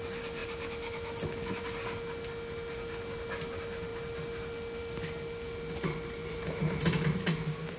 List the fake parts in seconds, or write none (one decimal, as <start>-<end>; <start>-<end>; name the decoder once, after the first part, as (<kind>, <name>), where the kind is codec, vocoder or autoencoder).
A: 6.2-7.8 (vocoder, BigVGAN v2)